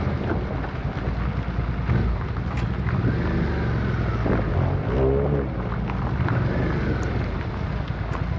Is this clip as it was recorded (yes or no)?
yes